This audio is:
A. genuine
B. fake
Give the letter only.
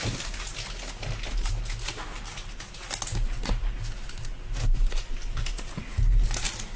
A